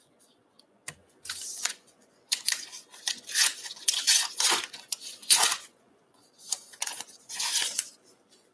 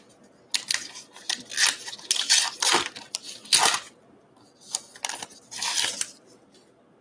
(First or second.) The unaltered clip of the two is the second